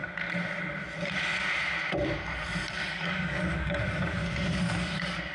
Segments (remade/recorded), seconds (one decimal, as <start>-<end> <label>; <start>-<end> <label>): 0.0-2.9 recorded; 2.9-5.3 remade